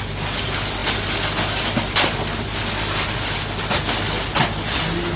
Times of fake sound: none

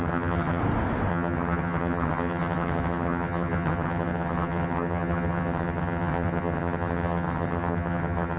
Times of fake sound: 0.0-0.6 (vocoder, HiFi-GAN); 1.1-8.4

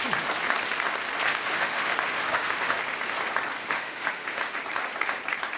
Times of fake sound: 1.3-2.8 (autoencoder, DAC-VAE); 3.6-4.4

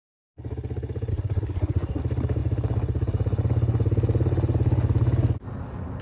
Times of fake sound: 1.1-2.0 (codec, SNAC)

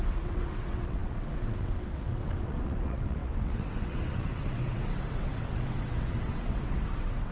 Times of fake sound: 0.0-7.3 (vocoder, WaveNeXt)

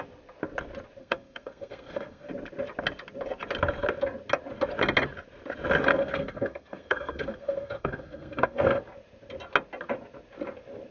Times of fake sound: 1.0-2.3 (codec, SNAC); 5.9-8.8